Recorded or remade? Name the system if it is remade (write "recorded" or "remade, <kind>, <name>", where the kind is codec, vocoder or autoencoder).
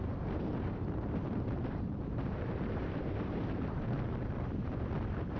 remade, vocoder, BigVGAN v2